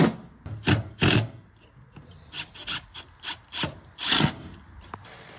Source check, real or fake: real